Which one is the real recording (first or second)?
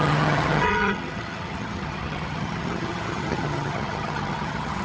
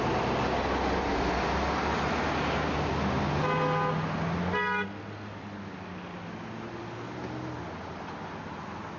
second